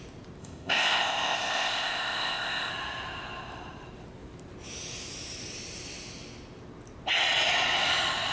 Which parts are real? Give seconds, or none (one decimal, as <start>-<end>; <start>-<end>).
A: 0.0-0.4; 2.7-8.3